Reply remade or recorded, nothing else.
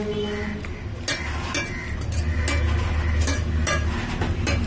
recorded